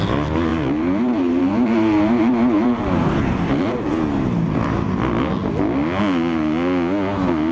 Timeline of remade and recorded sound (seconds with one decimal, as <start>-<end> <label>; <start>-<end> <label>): 0.0-0.5 recorded; 0.5-3.7 remade; 3.7-7.5 recorded